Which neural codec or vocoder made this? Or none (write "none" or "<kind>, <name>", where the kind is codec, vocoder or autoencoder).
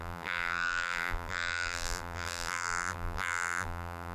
vocoder, BigVGAN v2